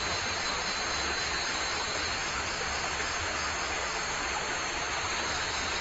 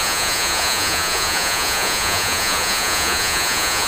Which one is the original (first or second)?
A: first